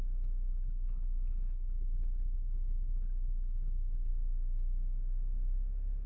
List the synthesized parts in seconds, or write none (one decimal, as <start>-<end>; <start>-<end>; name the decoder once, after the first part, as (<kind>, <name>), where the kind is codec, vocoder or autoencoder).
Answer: 0.5-4.1 (codec, HILCodec)